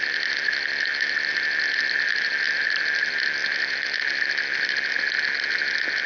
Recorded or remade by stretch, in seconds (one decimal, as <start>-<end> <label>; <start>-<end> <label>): 0.0-6.1 recorded